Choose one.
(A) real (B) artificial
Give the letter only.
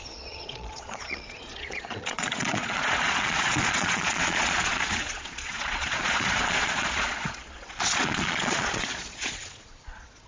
B